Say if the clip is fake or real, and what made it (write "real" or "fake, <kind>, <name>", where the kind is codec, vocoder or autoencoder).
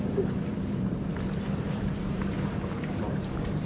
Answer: fake, vocoder, BigVGAN v2